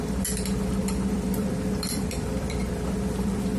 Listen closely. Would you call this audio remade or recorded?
remade